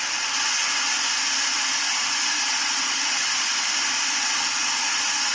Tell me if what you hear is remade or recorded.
recorded